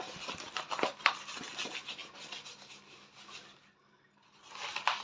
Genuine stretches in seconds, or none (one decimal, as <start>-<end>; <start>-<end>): 0.0-5.0